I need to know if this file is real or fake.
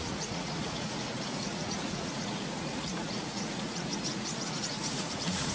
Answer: fake